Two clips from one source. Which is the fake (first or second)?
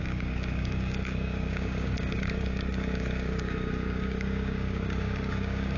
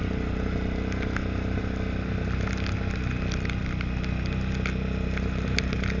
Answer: first